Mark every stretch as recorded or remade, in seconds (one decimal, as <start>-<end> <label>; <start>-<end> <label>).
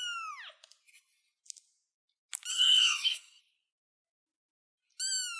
0.0-2.5 recorded; 2.5-3.4 remade; 3.4-5.4 recorded